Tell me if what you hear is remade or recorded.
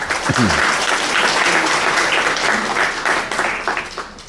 recorded